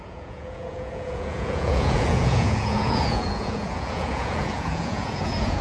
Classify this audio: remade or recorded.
remade